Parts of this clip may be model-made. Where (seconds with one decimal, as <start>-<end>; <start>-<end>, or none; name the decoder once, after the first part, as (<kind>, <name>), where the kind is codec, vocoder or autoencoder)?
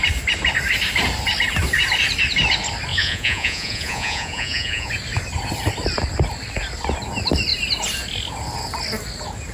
2.9-4.9 (vocoder, Vocos)